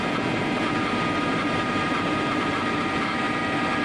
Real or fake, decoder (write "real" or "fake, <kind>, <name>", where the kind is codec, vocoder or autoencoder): fake, vocoder, BigVGAN v2